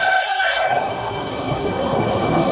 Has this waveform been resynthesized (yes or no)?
yes